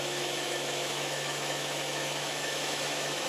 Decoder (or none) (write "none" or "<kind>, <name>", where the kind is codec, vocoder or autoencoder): autoencoder, DAC-VAE